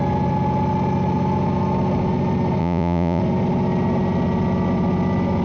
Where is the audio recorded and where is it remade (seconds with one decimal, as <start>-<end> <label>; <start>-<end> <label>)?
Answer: 0.0-2.6 recorded; 2.6-3.2 remade; 3.2-5.4 recorded